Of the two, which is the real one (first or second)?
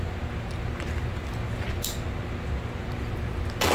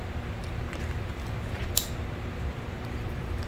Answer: first